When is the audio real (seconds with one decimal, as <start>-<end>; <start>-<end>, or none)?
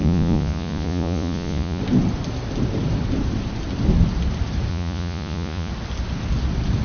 1.8-4.7; 5.7-6.8